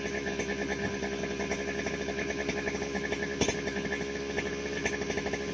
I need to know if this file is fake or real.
real